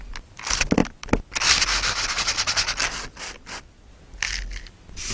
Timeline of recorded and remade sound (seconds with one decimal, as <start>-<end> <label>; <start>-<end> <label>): 0.0-5.1 recorded